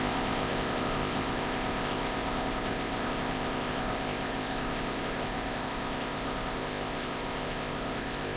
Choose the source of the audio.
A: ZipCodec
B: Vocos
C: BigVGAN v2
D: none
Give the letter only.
A